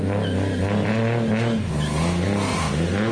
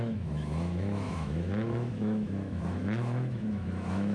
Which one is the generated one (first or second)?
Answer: second